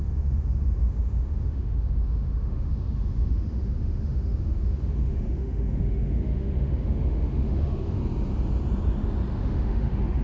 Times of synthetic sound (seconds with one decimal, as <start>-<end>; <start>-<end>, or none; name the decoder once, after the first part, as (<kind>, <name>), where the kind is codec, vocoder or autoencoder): 0.0-8.0 (autoencoder, DAC-VAE); 9.4-10.2